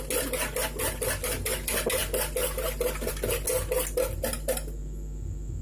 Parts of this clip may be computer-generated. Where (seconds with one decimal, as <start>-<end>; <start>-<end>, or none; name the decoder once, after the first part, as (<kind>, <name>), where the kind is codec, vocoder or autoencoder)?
none